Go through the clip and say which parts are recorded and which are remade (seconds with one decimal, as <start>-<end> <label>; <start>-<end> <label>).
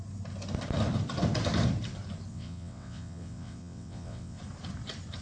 0.0-2.3 recorded; 2.3-4.4 remade; 4.4-5.2 recorded